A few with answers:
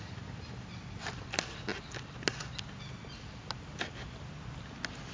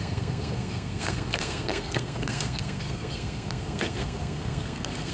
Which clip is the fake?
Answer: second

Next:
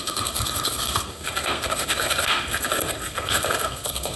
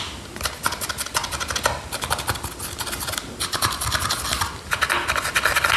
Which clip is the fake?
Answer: first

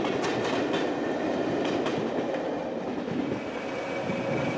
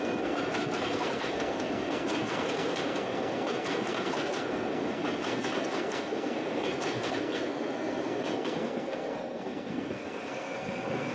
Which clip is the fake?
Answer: second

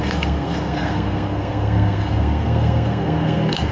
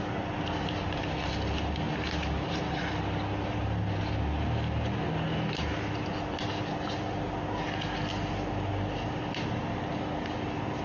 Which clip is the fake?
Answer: first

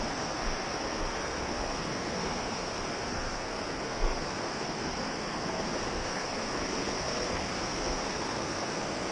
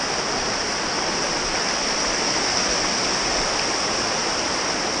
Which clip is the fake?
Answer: first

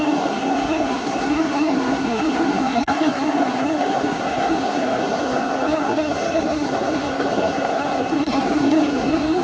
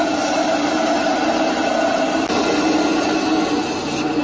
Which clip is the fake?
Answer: first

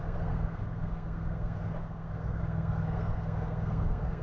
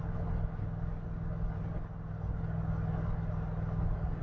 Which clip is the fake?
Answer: first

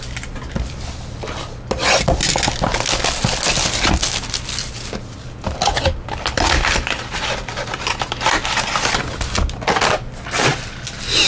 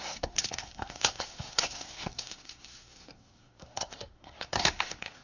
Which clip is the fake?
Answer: second